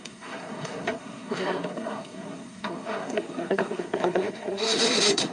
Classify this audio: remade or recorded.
remade